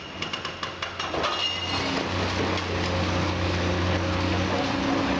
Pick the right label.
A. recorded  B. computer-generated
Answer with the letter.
A